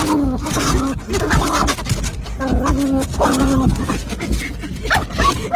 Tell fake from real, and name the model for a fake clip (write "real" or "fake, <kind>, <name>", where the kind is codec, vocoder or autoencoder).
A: real